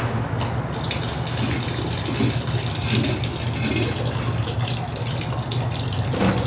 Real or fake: real